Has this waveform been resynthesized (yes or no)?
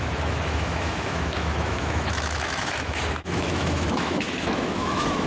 yes